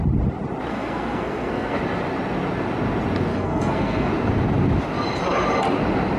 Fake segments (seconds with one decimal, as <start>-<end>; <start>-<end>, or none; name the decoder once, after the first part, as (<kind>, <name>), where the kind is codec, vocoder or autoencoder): 0.7-1.8 (codec, SNAC); 3.3-4.1